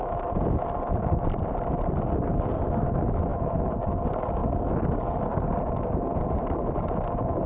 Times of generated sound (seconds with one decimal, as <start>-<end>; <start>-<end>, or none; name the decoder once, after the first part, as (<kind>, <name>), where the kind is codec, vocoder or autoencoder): none